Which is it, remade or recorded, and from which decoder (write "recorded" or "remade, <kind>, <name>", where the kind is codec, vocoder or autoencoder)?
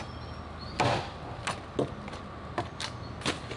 recorded